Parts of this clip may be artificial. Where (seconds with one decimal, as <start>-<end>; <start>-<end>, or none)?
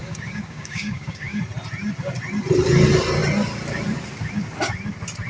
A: 0.0-1.4